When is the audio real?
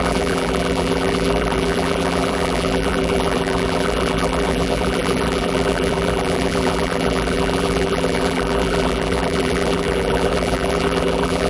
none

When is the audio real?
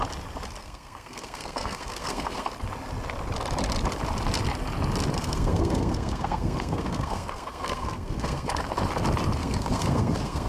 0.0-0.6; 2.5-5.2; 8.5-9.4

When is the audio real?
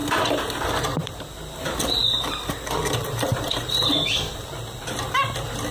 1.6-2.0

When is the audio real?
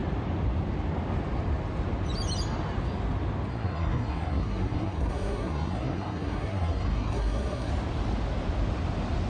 0.0-3.5; 7.7-9.3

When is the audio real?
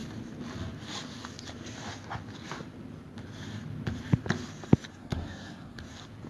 0.0-4.9; 5.8-6.3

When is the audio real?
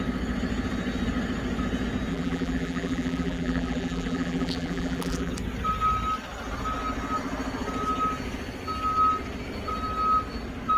0.0-2.1; 5.3-10.8